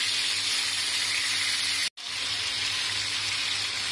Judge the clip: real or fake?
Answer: real